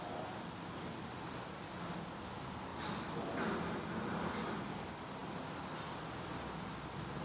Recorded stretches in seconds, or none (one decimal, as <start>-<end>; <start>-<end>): 0.0-7.2

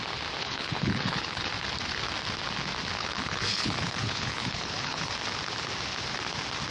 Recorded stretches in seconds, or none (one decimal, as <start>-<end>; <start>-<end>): 0.0-0.4; 1.5-3.0; 5.1-6.7